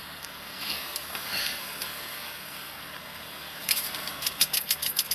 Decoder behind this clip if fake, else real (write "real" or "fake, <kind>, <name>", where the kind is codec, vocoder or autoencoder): fake, codec, SNAC